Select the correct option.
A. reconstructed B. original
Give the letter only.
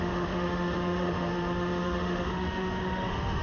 A